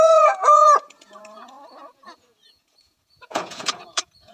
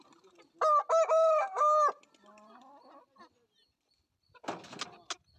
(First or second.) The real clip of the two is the second